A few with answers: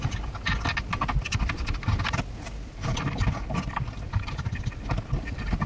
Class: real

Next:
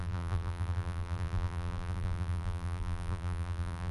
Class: fake